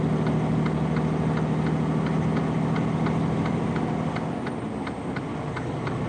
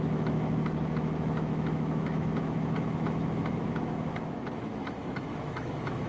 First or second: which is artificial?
second